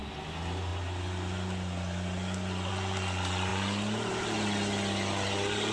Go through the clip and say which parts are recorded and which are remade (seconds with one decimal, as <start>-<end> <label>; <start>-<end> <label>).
0.0-5.7 recorded